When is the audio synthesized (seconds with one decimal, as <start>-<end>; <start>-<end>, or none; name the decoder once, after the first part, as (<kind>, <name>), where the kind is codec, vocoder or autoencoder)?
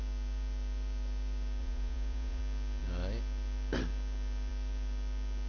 1.6-2.4 (vocoder, Vocos)